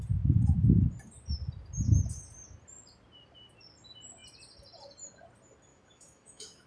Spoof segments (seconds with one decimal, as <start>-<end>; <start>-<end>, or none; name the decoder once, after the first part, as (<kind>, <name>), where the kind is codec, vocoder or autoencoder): 5.7-6.7 (autoencoder, DAC-VAE)